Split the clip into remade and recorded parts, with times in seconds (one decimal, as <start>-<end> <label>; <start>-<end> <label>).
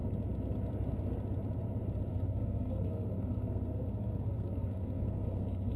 0.0-2.1 recorded; 2.1-5.8 remade